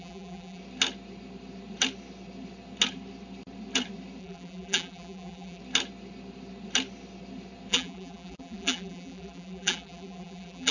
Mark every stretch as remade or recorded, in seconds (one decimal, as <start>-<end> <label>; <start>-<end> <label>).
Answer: 0.0-0.6 remade; 0.6-4.2 recorded; 4.2-5.6 remade; 5.6-7.7 recorded; 7.7-10.7 remade

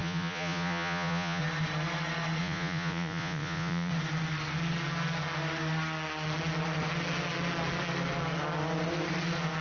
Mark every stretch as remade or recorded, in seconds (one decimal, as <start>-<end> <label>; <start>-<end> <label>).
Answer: 0.0-1.4 remade; 1.4-2.4 recorded; 2.4-3.9 remade; 3.9-9.6 recorded

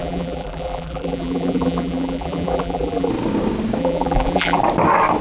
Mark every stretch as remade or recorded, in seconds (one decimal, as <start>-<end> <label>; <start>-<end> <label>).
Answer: 0.0-3.1 remade; 3.1-3.8 recorded; 3.8-4.6 remade; 4.6-5.2 recorded

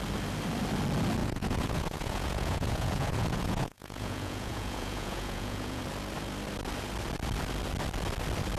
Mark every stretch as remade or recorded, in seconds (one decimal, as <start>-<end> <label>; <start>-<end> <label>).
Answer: 0.0-1.2 recorded; 1.2-5.8 remade; 5.8-8.6 recorded

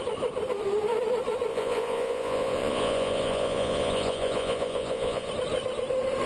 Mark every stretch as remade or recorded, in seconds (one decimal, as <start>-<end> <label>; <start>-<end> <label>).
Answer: 0.0-1.5 recorded; 1.5-5.3 remade; 5.3-6.3 recorded

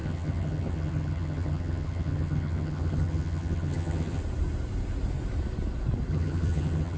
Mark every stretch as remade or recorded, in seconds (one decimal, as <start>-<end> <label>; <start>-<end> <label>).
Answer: 0.0-4.2 remade; 4.2-6.1 recorded; 6.1-7.0 remade

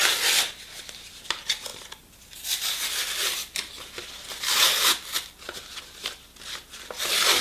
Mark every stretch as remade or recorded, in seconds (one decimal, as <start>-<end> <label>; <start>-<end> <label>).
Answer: 0.0-7.4 recorded

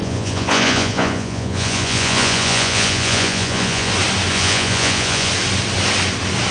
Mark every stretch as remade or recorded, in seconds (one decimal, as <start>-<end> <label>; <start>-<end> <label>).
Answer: 0.0-3.9 remade; 3.9-4.3 recorded; 4.3-5.3 remade; 5.3-6.5 recorded